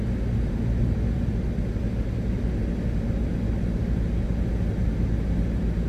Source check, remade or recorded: recorded